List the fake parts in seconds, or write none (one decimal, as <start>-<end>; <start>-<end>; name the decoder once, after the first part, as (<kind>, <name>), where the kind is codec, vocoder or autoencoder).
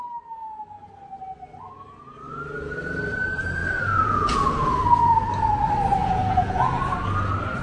3.6-4.7 (vocoder, Vocos); 6.0-6.8